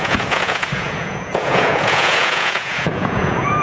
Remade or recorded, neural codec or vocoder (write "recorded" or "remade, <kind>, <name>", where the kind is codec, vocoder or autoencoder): remade, vocoder, Vocos